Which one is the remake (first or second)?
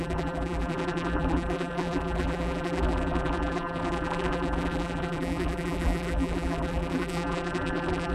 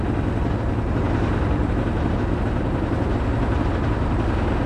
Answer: first